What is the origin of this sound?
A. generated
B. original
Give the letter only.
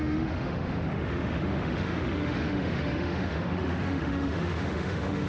A